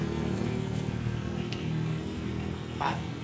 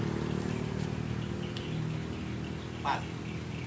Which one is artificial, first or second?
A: first